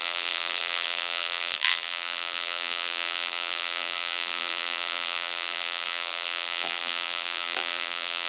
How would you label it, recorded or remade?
remade